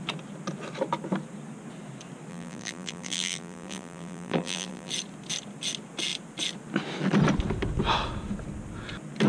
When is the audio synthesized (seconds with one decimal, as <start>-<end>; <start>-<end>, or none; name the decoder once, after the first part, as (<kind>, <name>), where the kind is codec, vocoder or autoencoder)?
2.3-4.9 (vocoder, BigVGAN v2)